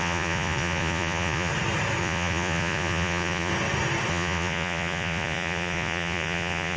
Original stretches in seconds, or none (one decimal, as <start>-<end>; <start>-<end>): 1.5-2.0; 3.5-4.1